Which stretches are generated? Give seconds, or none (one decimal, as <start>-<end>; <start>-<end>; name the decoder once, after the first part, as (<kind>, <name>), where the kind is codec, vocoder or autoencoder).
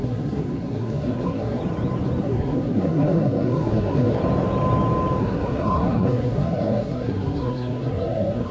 0.0-1.6 (codec, SNAC); 2.2-4.2; 5.2-8.5